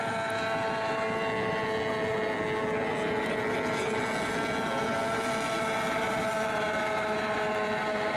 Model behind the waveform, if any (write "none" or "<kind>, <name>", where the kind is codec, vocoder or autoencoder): none